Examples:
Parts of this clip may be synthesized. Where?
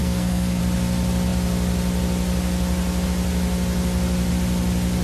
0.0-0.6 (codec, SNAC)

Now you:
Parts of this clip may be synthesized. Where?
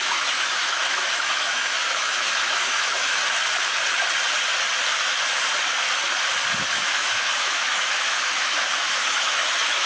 0.0-3.2 (autoencoder, DAC-VAE); 6.6-9.9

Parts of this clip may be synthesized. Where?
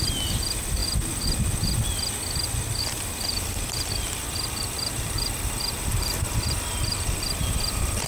0.0-0.8 (vocoder, BigVGAN v2); 2.8-8.1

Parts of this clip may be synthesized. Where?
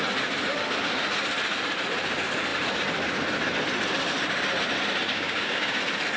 5.1-5.8 (codec, DAC)